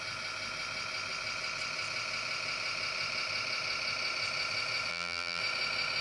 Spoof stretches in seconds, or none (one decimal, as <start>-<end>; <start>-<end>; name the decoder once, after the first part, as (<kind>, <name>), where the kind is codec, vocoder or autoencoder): 4.9-5.4 (vocoder, BigVGAN v2)